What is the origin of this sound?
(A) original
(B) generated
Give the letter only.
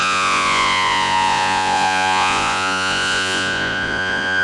B